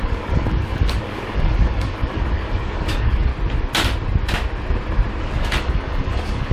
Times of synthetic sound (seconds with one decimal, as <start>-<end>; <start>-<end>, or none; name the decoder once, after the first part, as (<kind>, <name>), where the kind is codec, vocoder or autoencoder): 0.0-3.3 (codec, DAC); 5.2-6.5